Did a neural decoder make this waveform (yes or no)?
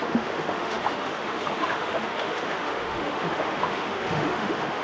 yes